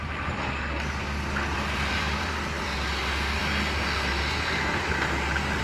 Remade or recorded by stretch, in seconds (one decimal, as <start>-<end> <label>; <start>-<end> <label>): 0.0-1.0 recorded; 1.0-2.9 remade; 2.9-5.6 recorded